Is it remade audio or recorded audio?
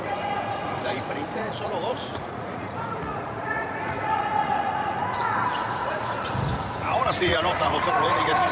remade